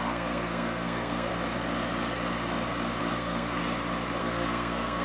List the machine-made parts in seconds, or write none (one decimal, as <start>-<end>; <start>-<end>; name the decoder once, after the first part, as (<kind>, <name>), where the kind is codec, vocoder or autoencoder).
0.0-1.3 (codec, SNAC); 3.0-3.6; 4.2-5.0